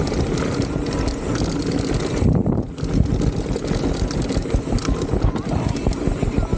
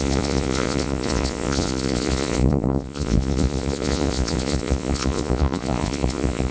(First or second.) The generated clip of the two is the second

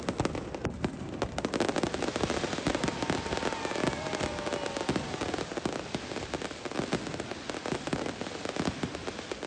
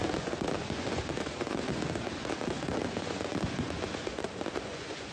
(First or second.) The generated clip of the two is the second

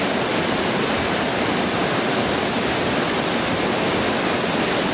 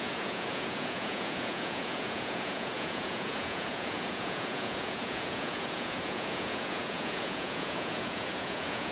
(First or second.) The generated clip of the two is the second